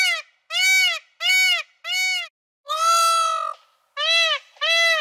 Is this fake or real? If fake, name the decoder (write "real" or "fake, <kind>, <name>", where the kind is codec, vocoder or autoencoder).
real